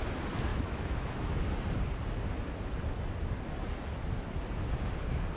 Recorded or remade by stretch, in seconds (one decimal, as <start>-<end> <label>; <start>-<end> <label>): 0.0-0.5 recorded; 0.5-1.4 remade; 1.4-5.4 recorded